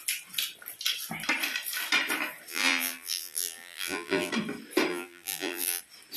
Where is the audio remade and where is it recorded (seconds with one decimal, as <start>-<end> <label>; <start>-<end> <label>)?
0.0-2.5 recorded; 2.5-4.3 remade; 4.3-4.9 recorded; 4.9-5.8 remade; 5.8-6.2 recorded